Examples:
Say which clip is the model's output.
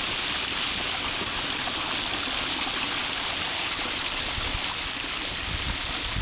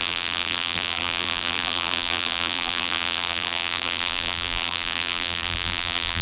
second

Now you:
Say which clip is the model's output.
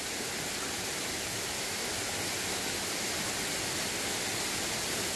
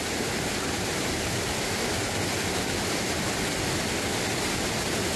second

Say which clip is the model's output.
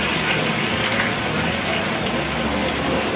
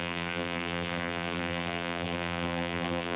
second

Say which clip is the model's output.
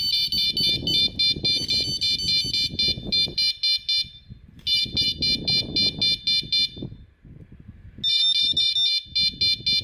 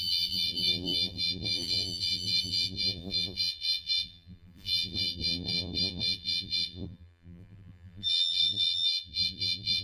second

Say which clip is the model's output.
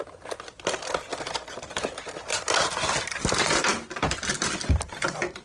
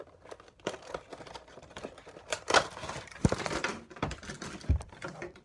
second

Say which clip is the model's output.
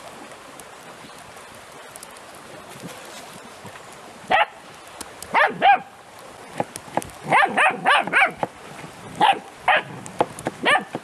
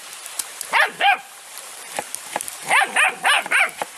second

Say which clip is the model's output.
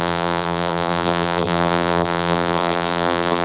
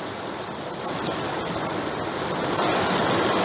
first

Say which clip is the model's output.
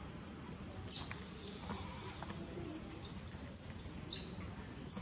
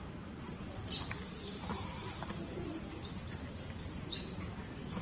second